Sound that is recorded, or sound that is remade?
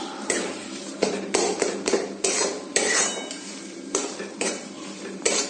remade